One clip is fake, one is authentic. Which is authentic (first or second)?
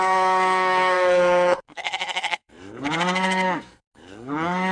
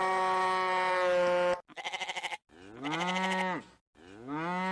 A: second